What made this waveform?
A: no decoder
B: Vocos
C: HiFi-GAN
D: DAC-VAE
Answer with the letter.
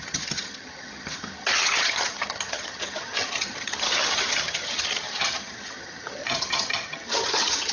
C